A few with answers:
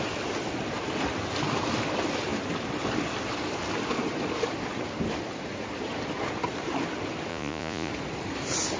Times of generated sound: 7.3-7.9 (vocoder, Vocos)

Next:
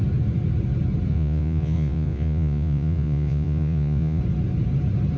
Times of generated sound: 1.1-4.2 (vocoder, Vocos)

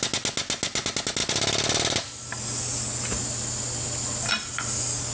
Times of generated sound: none

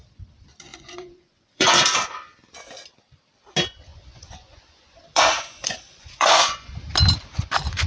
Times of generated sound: 0.7-1.7 (vocoder, Vocos); 3.9-6.7

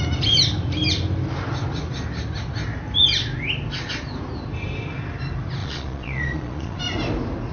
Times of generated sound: 5.6-6.8 (vocoder, Vocos)

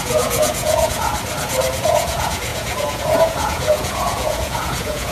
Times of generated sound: 0.0-1.1 (vocoder, Vocos); 1.8-5.1